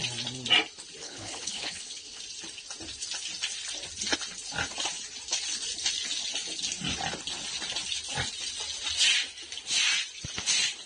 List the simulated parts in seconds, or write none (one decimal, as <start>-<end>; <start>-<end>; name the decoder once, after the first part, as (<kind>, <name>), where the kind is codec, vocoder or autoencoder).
1.0-2.2 (codec, HILCodec)